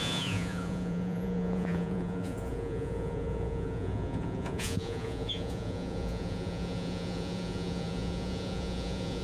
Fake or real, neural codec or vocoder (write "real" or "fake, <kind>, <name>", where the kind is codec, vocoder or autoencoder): fake, vocoder, Vocos